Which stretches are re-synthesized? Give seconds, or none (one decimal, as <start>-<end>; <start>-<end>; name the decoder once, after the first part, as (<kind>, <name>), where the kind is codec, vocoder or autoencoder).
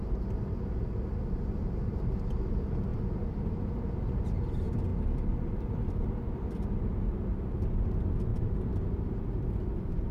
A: 2.9-3.5 (vocoder, BigVGAN v2); 4.9-6.5; 8.3-9.0